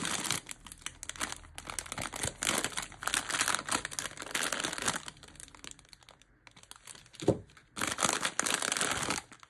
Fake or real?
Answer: real